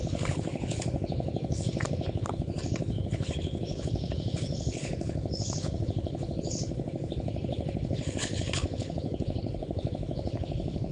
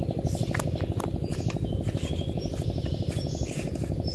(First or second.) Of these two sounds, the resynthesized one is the first